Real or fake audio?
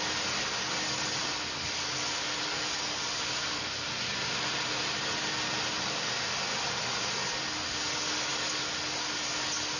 real